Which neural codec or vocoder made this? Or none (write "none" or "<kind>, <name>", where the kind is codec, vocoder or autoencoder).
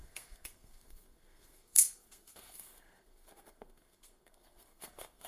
codec, SNAC